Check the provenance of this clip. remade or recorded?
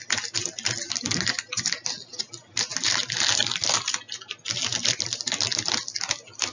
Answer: recorded